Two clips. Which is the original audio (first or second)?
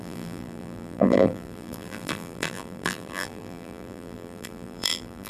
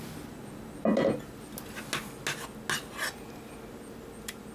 second